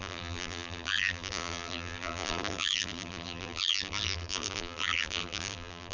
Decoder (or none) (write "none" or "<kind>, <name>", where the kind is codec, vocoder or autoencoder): vocoder, BigVGAN v2